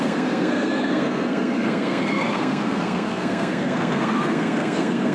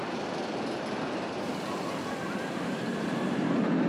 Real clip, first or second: second